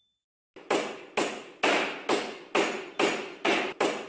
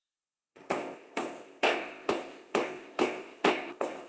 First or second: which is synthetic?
second